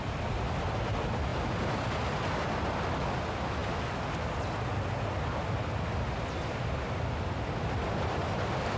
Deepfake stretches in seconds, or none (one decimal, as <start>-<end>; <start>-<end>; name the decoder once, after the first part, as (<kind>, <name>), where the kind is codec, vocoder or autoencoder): none